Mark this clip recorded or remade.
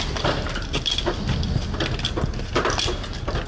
recorded